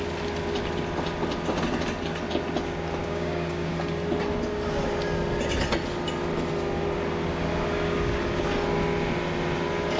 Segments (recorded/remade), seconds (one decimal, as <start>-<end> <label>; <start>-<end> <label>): 0.0-3.0 recorded; 3.0-3.7 remade; 3.7-10.0 recorded